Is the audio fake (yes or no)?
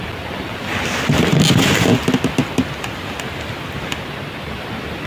no